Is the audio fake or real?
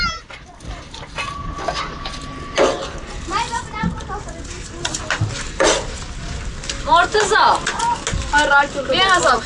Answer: real